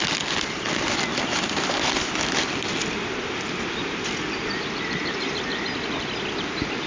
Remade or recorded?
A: recorded